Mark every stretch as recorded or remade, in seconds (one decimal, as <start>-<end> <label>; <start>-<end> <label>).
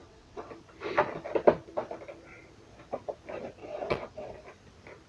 0.0-0.5 remade; 0.5-3.6 recorded; 3.6-4.3 remade; 4.3-5.1 recorded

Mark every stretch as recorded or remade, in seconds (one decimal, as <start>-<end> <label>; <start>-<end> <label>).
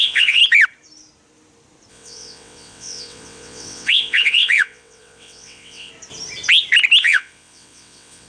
0.0-0.4 remade; 0.4-1.9 recorded; 1.9-5.9 remade; 5.9-7.0 recorded; 7.0-8.3 remade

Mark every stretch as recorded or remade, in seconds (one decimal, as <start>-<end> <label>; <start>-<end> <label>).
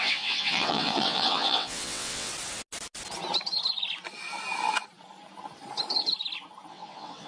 0.0-2.3 remade; 2.3-6.7 recorded; 6.7-7.3 remade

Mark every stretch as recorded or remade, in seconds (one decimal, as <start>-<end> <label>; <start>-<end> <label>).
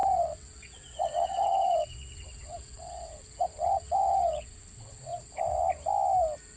0.0-5.1 remade; 5.1-6.6 recorded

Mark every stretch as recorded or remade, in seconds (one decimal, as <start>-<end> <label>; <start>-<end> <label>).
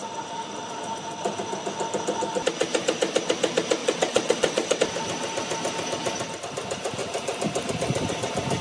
0.0-3.8 recorded; 3.8-4.8 remade; 4.8-8.6 recorded